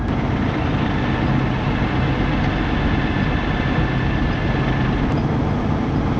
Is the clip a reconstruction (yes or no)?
no